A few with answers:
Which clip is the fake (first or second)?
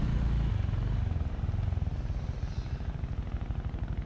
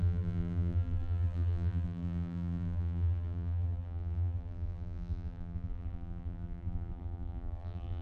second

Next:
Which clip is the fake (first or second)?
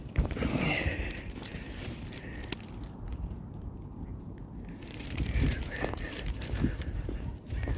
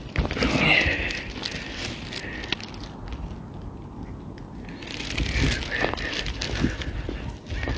first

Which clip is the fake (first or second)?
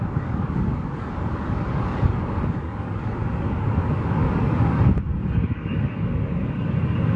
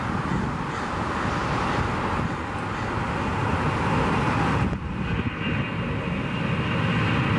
first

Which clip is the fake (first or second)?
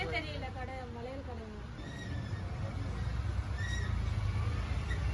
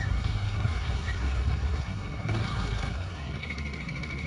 second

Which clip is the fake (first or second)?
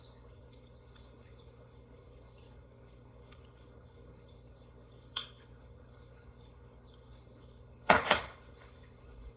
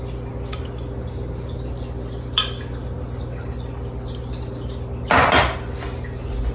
first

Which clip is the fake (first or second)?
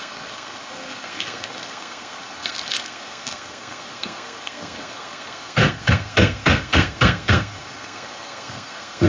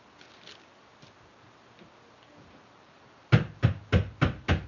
first